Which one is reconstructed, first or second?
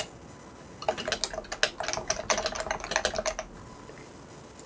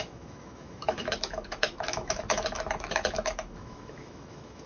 second